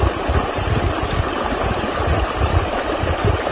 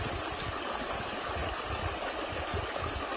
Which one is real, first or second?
second